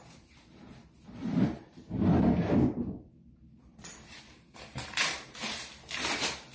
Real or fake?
fake